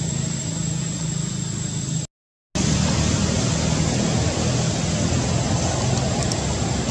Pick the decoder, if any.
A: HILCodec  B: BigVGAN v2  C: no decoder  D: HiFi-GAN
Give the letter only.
C